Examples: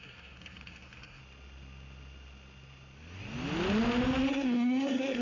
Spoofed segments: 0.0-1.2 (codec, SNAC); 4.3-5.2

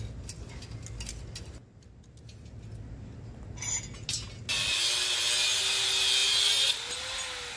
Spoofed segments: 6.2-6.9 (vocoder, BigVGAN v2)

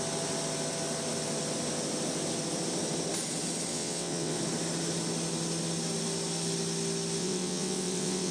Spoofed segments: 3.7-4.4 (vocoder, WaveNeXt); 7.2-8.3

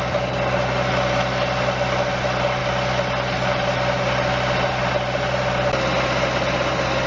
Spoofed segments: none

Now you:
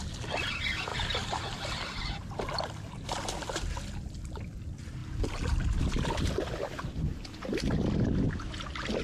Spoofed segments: 0.9-2.4 (vocoder, BigVGAN v2)